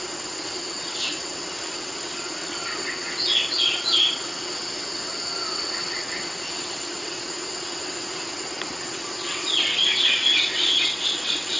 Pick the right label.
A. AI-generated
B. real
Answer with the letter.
A